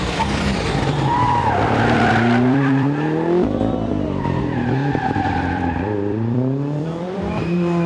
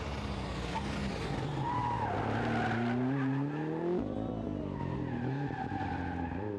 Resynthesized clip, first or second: first